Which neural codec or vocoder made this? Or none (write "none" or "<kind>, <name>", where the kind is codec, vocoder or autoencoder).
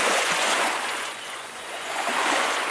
vocoder, Vocos